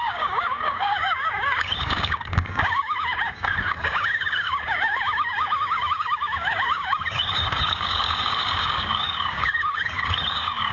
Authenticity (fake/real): fake